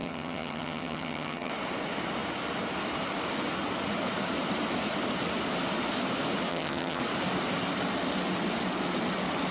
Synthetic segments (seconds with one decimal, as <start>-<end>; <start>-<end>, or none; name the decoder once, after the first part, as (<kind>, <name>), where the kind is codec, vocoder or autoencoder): 0.0-1.5 (vocoder, HiFi-GAN); 6.5-7.0